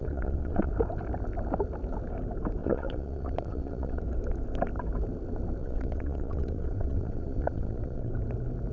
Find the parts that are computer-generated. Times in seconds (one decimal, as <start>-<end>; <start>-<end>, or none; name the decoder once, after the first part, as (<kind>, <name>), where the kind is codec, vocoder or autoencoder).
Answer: 0.0-0.7 (vocoder, WaveNeXt); 2.6-4.0; 5.6-8.1